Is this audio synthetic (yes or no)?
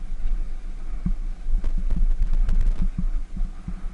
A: no